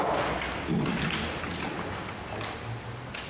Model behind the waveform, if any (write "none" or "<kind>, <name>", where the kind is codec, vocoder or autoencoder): none